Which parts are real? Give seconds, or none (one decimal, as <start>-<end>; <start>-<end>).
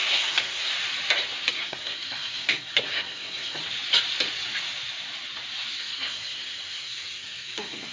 0.7-1.5; 3.6-5.8